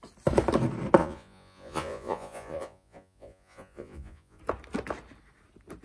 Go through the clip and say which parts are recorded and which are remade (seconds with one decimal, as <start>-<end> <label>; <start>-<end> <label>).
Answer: 0.0-1.0 recorded; 1.0-4.4 remade; 4.4-5.8 recorded